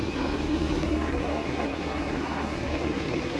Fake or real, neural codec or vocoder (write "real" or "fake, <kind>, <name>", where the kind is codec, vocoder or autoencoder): fake, codec, SNAC